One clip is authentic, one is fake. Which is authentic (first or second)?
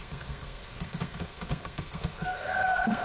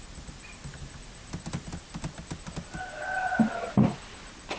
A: second